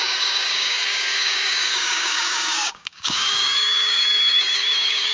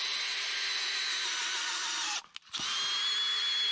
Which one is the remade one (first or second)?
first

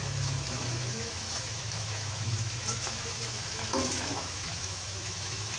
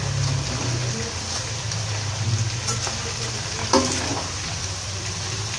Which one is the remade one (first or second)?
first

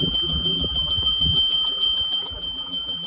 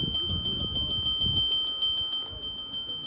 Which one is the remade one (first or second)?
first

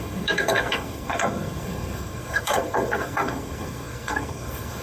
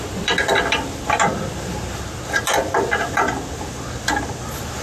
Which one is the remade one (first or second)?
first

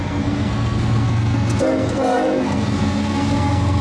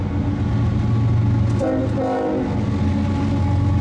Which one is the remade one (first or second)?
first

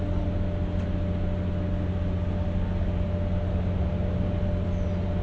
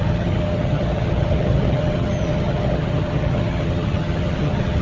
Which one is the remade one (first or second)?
second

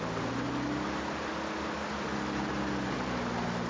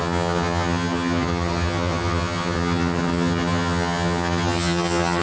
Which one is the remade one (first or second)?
second